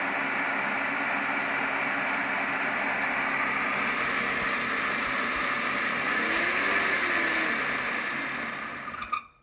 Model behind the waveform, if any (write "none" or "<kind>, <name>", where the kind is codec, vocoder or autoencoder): none